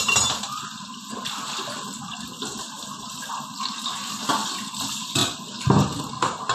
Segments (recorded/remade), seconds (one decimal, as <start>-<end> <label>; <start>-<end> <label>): 0.0-6.5 recorded